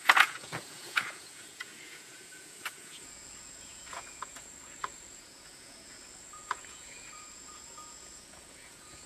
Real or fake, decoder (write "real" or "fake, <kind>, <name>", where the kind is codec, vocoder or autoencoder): fake, vocoder, Vocos